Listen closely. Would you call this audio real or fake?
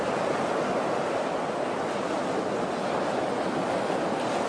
real